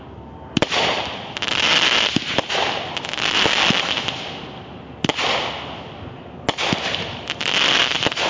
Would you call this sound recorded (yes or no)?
yes